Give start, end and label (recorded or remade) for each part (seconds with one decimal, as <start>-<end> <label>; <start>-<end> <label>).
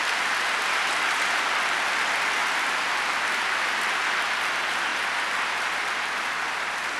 0.0-2.4 recorded; 2.4-3.0 remade; 3.0-4.9 recorded; 4.9-5.5 remade; 5.5-7.0 recorded